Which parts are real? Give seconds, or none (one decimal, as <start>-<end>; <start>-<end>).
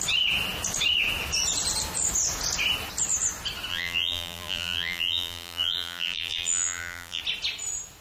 0.0-3.7; 7.2-8.0